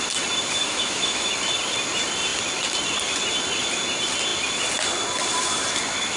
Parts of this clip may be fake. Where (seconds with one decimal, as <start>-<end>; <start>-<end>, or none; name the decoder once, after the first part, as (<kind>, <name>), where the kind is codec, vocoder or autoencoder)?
0.6-1.3 (autoencoder, DAC-VAE)